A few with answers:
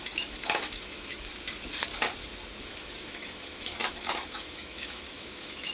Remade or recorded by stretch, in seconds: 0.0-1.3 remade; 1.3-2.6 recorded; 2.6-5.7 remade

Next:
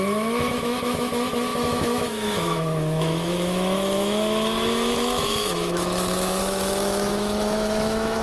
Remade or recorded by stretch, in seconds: 0.0-8.2 remade

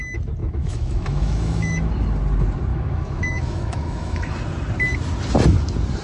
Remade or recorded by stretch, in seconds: 0.0-0.4 recorded; 0.4-1.9 remade; 1.9-2.7 recorded; 2.7-4.3 remade; 4.3-6.0 recorded

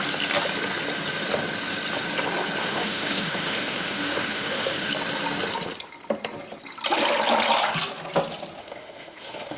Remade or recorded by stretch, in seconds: 0.0-2.6 recorded; 2.6-4.9 remade; 4.9-8.6 recorded; 8.6-9.6 remade

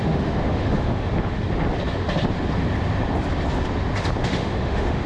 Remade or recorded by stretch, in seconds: 0.0-1.1 remade; 1.1-4.2 recorded; 4.2-5.1 remade

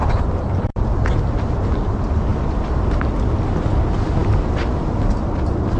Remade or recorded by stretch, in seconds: 0.0-5.8 recorded